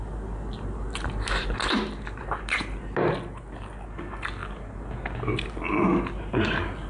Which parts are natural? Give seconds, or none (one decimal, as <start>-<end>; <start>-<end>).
0.0-6.9